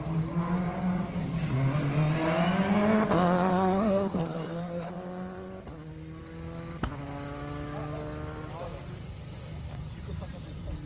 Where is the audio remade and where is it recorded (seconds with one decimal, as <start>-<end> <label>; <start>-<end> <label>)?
0.0-3.5 recorded; 3.5-4.9 remade; 4.9-10.9 recorded